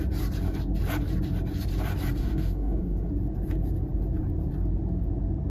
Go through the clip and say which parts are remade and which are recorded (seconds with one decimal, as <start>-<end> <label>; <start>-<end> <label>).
0.0-2.2 recorded; 2.2-3.1 remade; 3.1-5.5 recorded